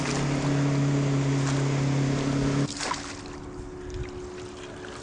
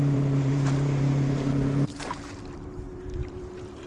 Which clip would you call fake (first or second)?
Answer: second